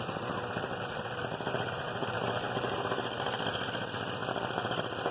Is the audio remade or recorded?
recorded